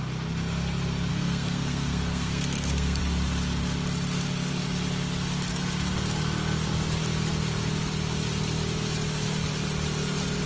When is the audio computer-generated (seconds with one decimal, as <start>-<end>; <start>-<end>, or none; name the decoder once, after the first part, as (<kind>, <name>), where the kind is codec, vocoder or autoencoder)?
1.1-3.0 (codec, SNAC)